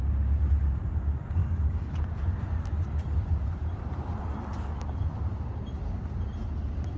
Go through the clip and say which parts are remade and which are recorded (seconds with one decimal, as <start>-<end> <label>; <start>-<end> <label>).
0.0-1.4 recorded; 1.4-2.1 remade; 2.1-7.0 recorded